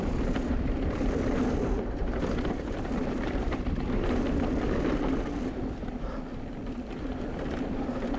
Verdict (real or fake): fake